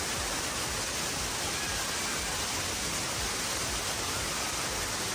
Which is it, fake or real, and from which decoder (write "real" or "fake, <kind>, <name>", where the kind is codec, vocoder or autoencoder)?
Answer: real